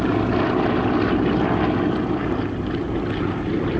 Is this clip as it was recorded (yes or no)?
yes